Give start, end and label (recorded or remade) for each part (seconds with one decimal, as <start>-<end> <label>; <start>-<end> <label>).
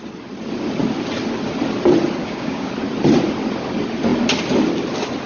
0.0-2.2 recorded; 2.2-2.7 remade; 2.7-5.3 recorded